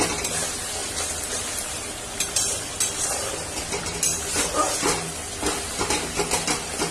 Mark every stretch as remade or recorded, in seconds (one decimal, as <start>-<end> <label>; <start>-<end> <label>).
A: 0.0-0.8 recorded; 0.8-4.9 remade; 4.9-6.9 recorded